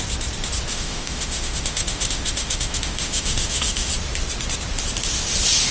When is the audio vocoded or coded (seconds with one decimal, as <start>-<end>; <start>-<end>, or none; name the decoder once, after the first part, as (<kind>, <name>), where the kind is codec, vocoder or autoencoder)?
0.7-3.9 (autoencoder, DAC-VAE)